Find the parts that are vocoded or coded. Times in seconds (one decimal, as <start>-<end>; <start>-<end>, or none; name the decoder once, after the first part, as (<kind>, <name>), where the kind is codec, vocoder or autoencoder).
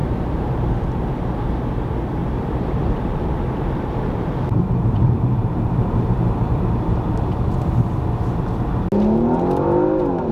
0.0-0.7 (vocoder, BigVGAN v2); 2.2-7.2